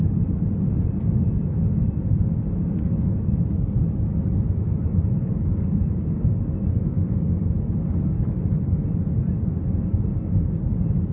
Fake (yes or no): no